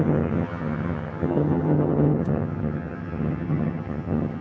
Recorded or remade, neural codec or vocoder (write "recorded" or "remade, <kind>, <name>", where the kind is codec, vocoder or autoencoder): remade, vocoder, HiFi-GAN